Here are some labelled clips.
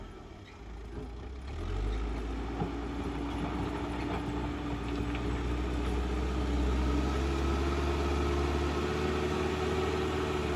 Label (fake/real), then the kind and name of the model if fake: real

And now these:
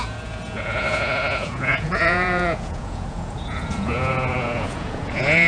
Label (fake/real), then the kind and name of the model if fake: fake, vocoder, Vocos